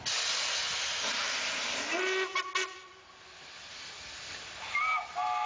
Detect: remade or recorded recorded